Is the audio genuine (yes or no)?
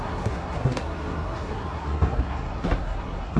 no